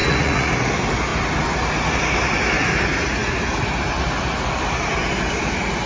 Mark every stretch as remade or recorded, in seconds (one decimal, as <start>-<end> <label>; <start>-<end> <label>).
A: 0.0-0.5 remade; 0.5-5.9 recorded